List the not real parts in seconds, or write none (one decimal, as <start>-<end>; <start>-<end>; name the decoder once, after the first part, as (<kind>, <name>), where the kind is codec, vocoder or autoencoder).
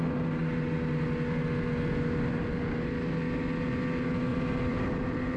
4.3-5.4 (vocoder, BigVGAN v2)